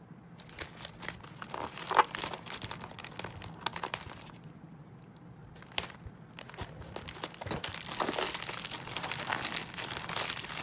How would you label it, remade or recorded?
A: recorded